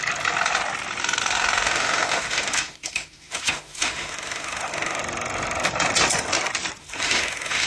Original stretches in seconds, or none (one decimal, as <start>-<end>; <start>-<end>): 0.0-1.2; 5.0-6.8